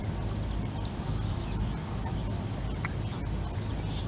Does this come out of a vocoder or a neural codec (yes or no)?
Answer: no